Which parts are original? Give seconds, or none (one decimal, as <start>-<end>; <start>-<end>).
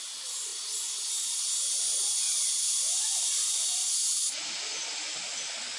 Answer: none